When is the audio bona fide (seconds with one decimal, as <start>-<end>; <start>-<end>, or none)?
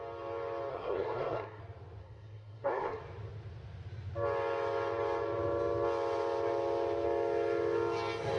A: 0.0-0.7; 1.6-2.0; 3.0-8.4